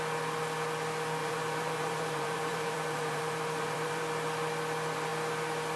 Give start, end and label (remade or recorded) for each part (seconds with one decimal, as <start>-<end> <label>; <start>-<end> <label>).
0.0-1.2 recorded; 1.2-4.0 remade; 4.0-5.8 recorded